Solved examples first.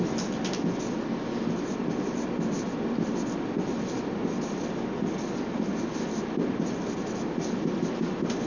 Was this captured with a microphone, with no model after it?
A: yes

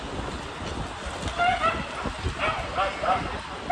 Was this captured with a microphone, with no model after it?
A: yes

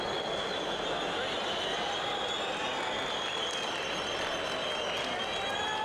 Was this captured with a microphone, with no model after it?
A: yes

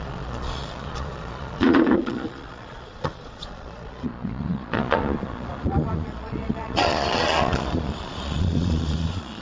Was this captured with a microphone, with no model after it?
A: no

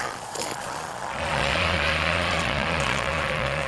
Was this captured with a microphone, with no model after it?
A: no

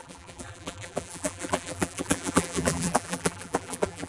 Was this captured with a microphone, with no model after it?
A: no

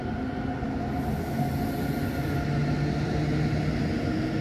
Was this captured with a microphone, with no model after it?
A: yes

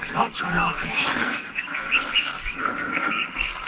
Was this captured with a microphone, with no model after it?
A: no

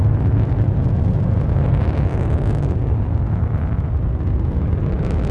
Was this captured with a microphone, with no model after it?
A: yes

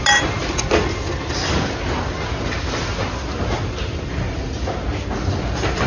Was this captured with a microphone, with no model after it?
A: yes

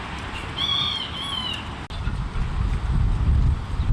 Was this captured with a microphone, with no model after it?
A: yes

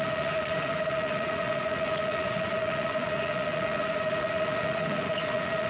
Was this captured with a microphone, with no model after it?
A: no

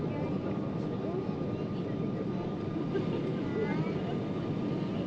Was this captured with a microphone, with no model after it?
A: yes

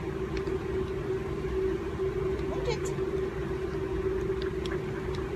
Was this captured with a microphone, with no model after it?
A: yes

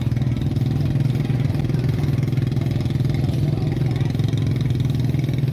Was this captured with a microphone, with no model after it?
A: yes